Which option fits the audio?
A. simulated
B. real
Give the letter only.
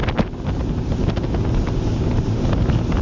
B